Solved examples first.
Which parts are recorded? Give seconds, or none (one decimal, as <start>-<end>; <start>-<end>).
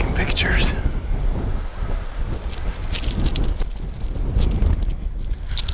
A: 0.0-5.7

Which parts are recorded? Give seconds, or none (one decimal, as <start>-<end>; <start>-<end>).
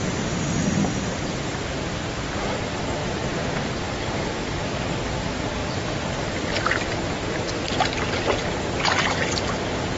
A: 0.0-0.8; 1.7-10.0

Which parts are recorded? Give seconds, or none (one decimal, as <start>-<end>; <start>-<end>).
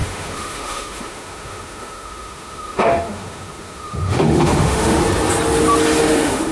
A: 5.0-6.0